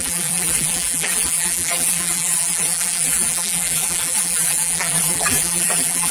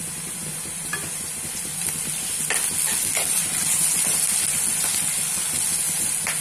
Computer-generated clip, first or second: first